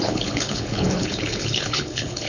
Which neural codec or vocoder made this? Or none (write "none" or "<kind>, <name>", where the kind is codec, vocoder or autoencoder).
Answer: codec, HILCodec